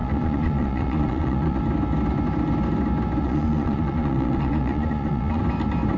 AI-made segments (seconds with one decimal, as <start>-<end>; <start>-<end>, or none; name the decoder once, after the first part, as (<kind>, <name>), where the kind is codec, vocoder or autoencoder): 0.0-1.6 (vocoder, Vocos); 3.2-5.4